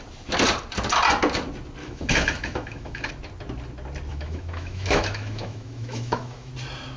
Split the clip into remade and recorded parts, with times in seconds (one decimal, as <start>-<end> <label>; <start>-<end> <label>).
0.0-1.8 recorded; 1.8-3.1 remade; 3.1-4.1 recorded; 4.1-6.5 remade; 6.5-7.0 recorded